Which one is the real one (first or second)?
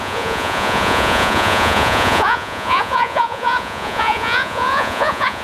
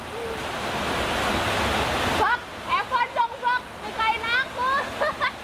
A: second